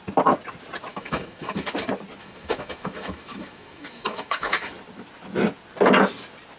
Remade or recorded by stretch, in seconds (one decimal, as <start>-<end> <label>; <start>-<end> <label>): 0.0-0.9 recorded; 0.9-1.7 remade; 1.7-2.2 recorded; 2.2-4.7 remade; 4.7-6.6 recorded